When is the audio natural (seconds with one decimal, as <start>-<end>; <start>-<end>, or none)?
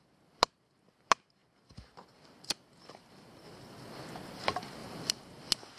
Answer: 0.0-4.8; 5.3-5.8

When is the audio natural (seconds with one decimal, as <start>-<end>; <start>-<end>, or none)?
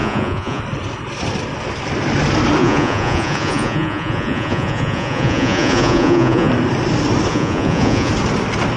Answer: 0.6-2.6; 6.5-7.3; 8.1-8.8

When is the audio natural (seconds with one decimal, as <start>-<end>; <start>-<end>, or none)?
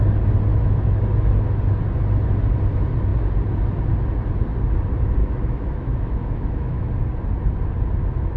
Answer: 0.0-0.5; 1.0-5.2; 6.9-8.4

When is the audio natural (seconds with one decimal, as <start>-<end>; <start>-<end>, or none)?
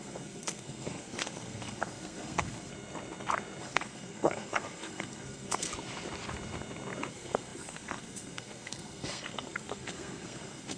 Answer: 2.7-3.6; 5.7-7.1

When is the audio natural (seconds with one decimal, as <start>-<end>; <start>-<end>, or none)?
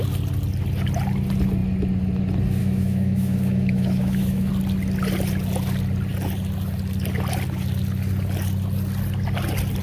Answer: 0.0-2.6; 4.5-9.8